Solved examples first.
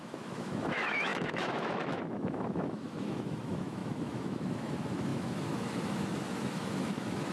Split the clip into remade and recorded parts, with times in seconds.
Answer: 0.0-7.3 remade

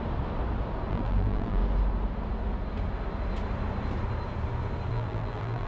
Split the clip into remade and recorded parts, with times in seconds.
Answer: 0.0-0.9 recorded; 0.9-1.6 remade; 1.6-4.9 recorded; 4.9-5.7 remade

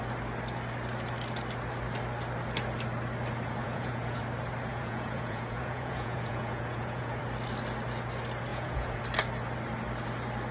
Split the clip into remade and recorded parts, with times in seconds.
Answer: 0.0-3.6 recorded; 3.6-4.2 remade; 4.2-4.7 recorded; 4.7-7.2 remade; 7.2-8.5 recorded; 8.5-9.0 remade; 9.0-10.5 recorded